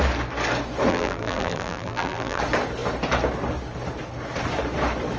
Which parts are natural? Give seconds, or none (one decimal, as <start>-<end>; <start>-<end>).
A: 0.0-0.9; 2.4-5.2